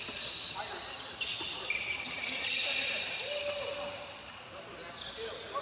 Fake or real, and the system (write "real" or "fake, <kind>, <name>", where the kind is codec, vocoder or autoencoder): real